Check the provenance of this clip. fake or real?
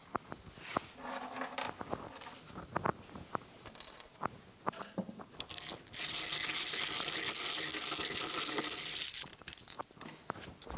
real